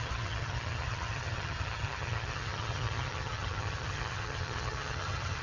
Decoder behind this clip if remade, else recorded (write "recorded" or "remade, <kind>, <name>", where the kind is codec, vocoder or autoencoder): remade, vocoder, HiFi-GAN